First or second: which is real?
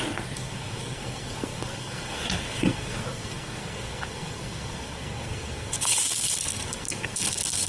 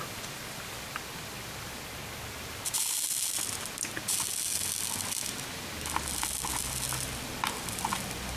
second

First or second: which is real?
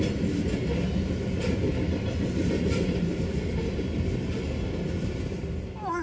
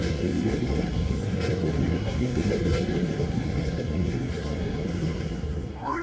first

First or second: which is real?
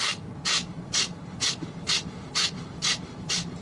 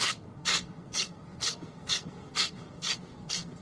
first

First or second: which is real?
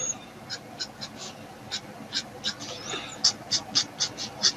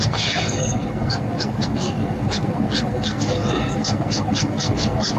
first